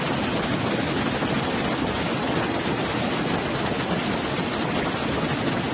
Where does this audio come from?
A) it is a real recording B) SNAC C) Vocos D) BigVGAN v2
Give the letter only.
A